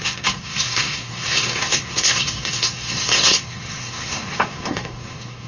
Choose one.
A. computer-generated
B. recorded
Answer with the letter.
A